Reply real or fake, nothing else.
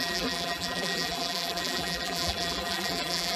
fake